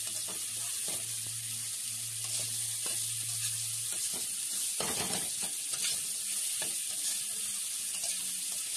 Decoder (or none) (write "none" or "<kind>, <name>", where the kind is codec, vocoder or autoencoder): none